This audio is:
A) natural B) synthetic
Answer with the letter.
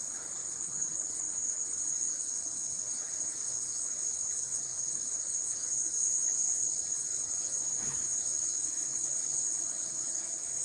B